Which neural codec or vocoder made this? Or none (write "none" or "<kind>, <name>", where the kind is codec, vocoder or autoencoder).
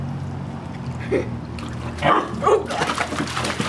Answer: none